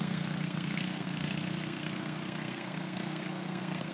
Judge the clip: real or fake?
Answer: fake